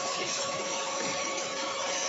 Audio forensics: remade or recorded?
remade